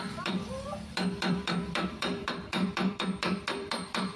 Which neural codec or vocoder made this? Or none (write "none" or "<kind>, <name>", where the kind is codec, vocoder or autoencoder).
vocoder, BigVGAN v2